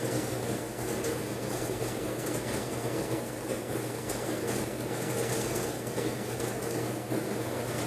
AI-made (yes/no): yes